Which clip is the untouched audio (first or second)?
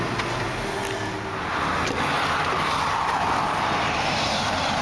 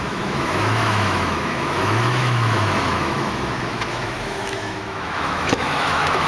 first